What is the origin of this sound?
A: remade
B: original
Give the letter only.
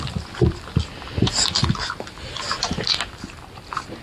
B